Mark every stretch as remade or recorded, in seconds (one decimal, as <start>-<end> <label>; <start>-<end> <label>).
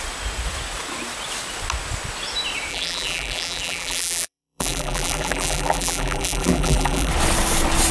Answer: 0.0-2.7 recorded; 2.7-7.1 remade; 7.1-7.9 recorded